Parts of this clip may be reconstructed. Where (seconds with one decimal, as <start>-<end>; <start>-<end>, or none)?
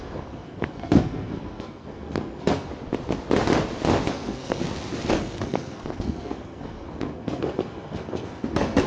0.0-2.7; 4.1-4.6; 5.1-8.9